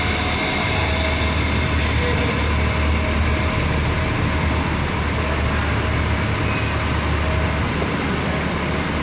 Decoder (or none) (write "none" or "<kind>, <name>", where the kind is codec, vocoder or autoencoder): none